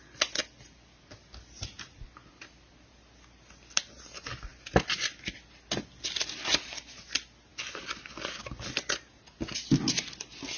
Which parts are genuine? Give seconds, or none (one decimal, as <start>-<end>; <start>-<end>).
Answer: 0.0-10.6